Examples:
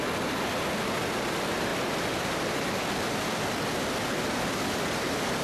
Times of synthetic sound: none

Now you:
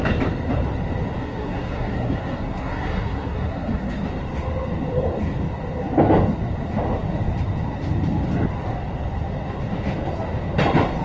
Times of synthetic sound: 1.2-4.0 (codec, SNAC)

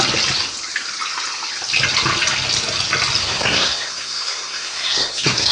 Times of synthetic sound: 3.2-5.5 (codec, SNAC)

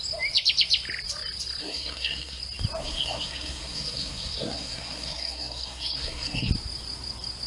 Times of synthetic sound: 1.6-2.4 (codec, SNAC); 2.8-6.5